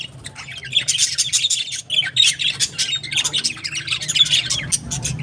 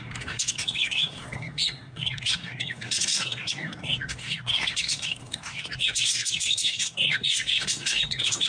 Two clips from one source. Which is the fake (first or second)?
second